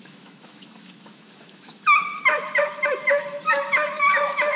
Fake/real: fake